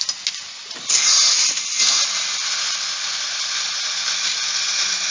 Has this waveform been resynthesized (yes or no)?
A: no